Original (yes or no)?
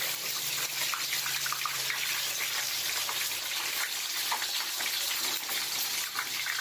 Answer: yes